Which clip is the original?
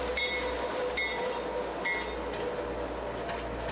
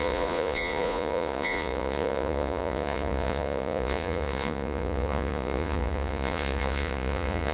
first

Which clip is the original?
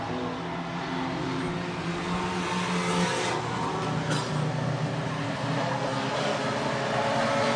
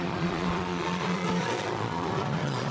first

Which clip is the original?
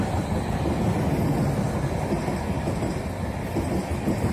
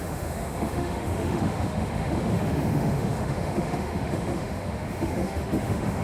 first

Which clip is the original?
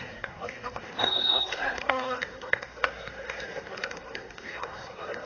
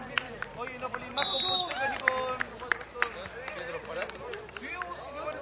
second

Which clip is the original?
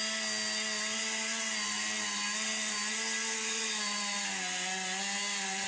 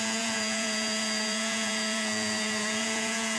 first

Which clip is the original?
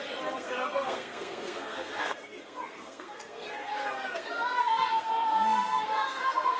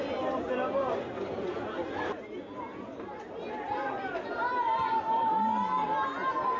second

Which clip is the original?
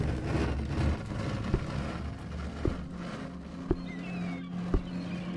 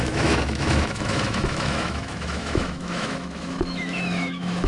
first